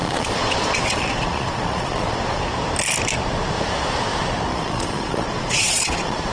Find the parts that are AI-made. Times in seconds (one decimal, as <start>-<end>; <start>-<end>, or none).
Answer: 0.0-2.4; 4.5-6.3